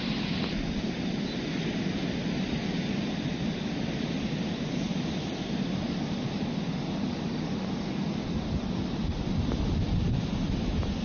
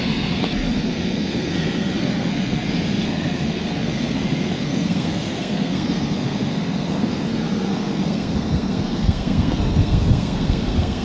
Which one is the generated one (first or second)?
second